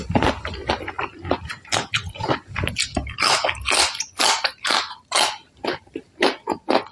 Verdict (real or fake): real